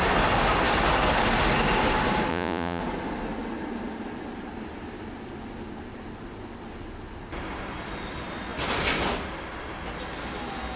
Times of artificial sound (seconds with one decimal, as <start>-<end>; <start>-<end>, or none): 2.3-2.8